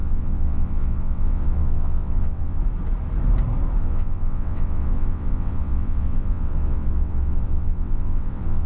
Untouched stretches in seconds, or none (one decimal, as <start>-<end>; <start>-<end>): 2.6-3.8